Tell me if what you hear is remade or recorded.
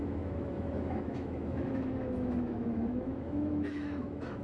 remade